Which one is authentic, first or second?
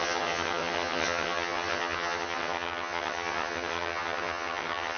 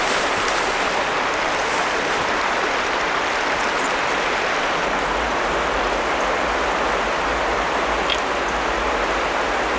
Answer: second